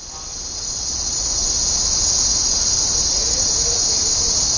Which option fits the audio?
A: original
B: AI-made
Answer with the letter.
A